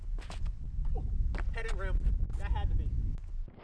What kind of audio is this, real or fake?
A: real